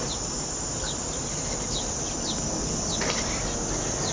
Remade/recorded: recorded